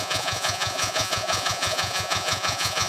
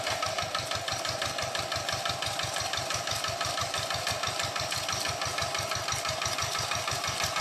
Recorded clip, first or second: second